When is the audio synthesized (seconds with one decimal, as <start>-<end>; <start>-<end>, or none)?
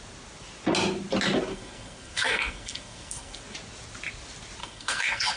1.5-3.4; 4.6-5.4